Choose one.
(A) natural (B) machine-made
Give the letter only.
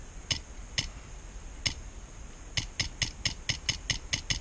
A